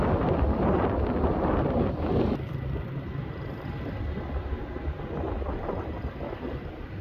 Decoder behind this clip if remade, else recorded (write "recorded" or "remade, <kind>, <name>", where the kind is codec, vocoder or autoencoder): recorded